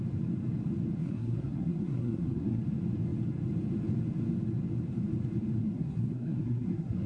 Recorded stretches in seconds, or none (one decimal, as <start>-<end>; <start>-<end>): 0.0-1.0; 2.6-5.6